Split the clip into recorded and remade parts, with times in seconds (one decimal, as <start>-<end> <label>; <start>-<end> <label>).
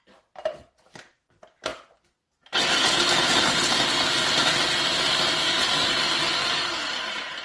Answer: 0.0-7.4 recorded